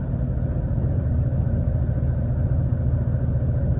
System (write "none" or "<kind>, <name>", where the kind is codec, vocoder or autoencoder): none